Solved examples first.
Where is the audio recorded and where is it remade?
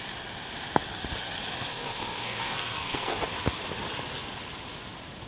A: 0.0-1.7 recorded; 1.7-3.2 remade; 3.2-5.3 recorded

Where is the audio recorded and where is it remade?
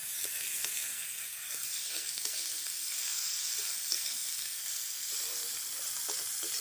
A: 0.0-5.1 remade; 5.1-6.6 recorded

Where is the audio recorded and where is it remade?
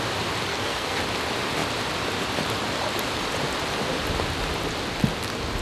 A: 0.0-0.5 recorded; 0.5-1.0 remade; 1.0-5.6 recorded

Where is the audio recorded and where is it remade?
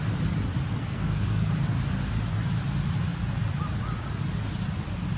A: 0.0-0.8 recorded; 0.8-1.5 remade; 1.5-5.2 recorded